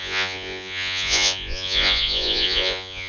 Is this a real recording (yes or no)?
no